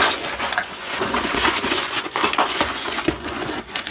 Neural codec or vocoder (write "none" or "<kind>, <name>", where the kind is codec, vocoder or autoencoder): vocoder, Vocos